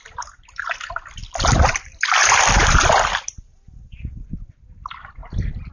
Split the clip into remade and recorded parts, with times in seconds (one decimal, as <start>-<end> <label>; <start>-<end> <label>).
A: 0.0-5.7 recorded